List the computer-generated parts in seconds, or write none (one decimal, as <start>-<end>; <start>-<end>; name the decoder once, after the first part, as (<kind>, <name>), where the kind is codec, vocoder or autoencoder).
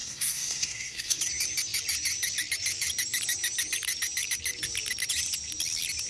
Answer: 0.0-1.2 (codec, SNAC)